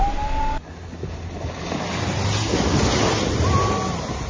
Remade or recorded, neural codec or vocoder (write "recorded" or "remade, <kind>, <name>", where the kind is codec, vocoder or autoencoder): recorded